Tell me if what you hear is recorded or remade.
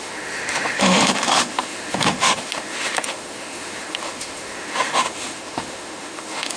remade